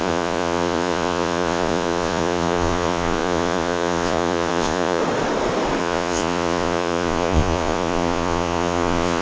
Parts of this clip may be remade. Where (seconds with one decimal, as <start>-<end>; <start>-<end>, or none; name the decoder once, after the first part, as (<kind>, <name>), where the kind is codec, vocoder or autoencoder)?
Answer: 0.0-5.0 (vocoder, Vocos); 5.8-9.2